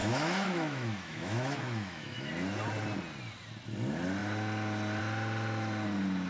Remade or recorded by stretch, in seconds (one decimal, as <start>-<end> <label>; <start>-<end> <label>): 0.0-2.3 remade; 2.3-6.3 recorded